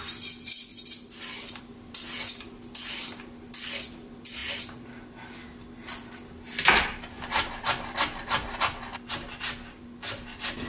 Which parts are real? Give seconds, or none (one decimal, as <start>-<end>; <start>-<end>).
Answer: 0.0-10.7